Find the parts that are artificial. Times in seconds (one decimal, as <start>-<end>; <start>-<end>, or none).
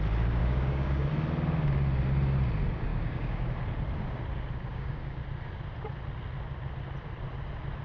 0.4-1.1; 2.9-3.5; 4.7-5.2